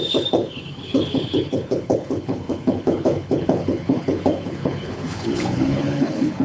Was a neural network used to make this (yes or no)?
yes